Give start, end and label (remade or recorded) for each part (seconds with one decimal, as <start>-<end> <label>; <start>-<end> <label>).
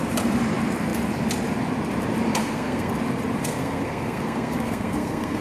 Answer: 0.0-2.4 recorded; 2.4-2.9 remade; 2.9-3.4 recorded; 3.4-5.4 remade